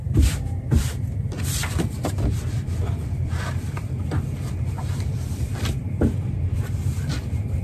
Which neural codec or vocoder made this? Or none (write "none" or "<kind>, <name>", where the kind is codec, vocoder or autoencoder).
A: vocoder, BigVGAN v2